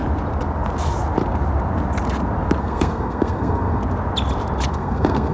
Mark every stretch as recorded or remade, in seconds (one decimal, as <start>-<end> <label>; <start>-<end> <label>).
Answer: 0.0-2.6 recorded; 2.6-3.8 remade; 3.8-4.7 recorded; 4.7-5.3 remade